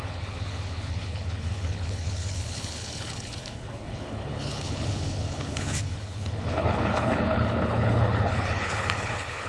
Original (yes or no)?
no